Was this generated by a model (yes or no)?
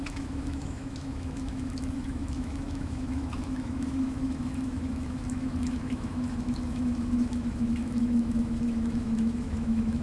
yes